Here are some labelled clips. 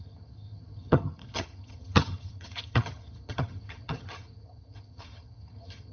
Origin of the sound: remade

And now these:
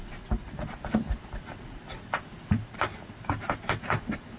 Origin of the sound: recorded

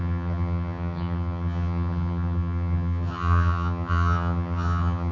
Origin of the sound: remade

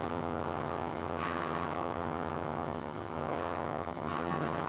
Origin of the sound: remade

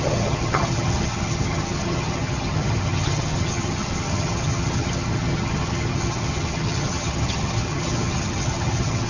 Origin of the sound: remade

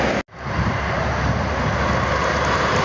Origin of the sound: recorded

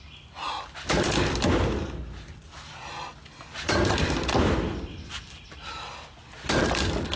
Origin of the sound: recorded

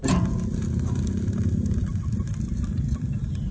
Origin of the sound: recorded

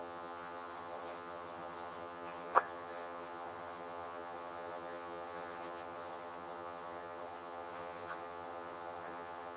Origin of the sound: remade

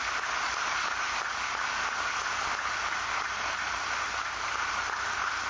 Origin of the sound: recorded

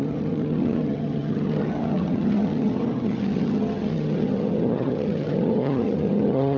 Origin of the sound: remade